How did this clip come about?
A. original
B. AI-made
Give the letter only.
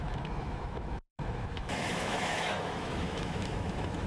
B